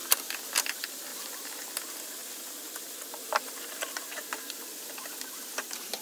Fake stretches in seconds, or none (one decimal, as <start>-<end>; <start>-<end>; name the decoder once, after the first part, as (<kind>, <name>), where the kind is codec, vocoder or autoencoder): 1.1-1.7 (vocoder, BigVGAN v2)